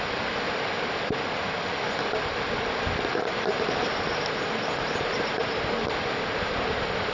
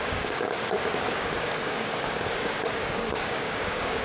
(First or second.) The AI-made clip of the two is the second